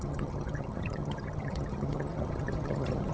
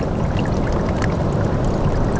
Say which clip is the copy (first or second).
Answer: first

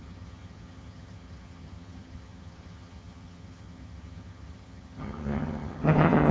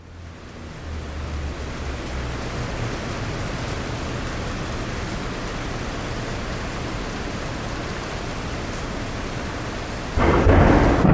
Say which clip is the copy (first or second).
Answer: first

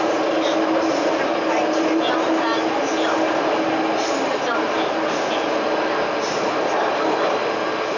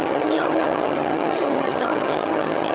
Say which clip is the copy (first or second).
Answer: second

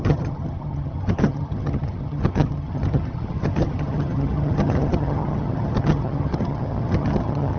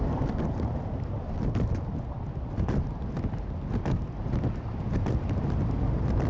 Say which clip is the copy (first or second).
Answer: first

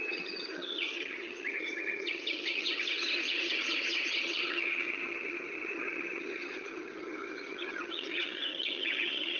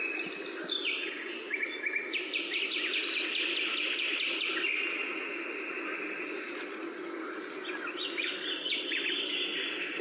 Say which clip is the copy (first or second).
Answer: first